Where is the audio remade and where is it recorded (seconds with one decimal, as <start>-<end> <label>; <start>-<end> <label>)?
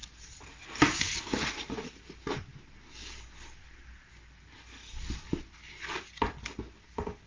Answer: 0.0-7.3 recorded